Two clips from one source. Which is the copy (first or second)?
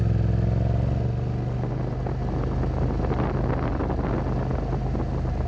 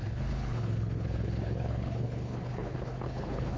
second